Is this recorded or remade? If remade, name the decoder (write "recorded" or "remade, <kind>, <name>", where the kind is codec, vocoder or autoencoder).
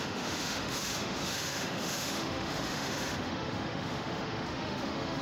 remade, autoencoder, DAC-VAE